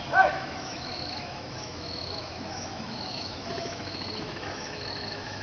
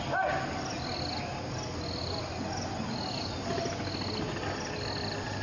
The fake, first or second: first